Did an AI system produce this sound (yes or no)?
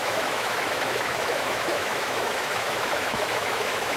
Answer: yes